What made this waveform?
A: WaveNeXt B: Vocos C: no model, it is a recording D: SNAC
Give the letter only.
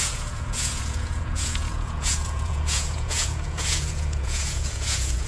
B